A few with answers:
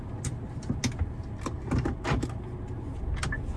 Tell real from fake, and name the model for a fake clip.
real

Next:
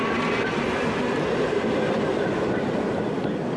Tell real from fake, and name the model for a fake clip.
real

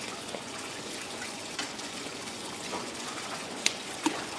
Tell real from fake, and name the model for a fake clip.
fake, vocoder, Vocos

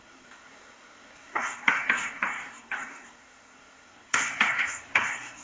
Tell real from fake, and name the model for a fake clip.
fake, codec, SNAC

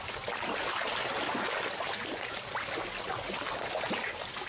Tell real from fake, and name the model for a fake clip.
real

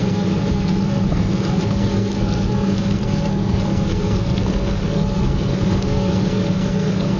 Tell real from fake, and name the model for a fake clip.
fake, codec, SNAC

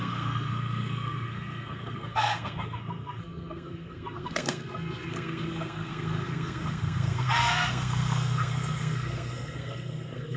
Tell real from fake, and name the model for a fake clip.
fake, codec, SNAC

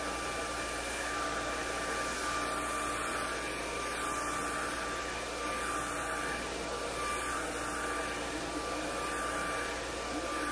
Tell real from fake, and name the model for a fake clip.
real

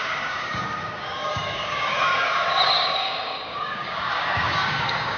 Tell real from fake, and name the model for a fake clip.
fake, codec, DAC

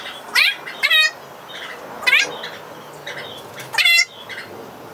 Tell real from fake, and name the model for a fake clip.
real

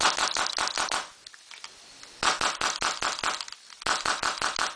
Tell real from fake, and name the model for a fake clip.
real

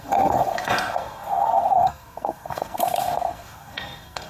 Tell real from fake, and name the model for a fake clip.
fake, codec, SNAC